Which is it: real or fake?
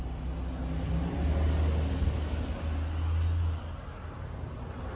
real